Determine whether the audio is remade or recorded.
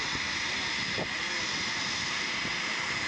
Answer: recorded